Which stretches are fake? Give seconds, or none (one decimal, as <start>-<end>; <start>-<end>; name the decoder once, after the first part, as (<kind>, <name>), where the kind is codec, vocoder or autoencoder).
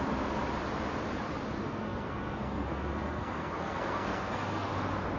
1.6-4.7 (codec, SNAC)